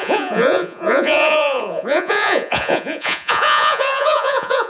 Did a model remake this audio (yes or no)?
yes